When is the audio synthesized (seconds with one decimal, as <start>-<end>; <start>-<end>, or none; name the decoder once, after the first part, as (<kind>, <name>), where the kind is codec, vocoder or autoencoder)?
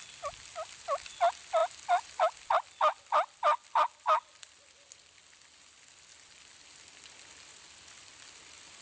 none